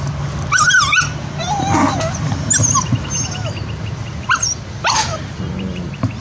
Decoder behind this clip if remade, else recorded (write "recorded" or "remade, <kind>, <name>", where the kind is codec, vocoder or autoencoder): recorded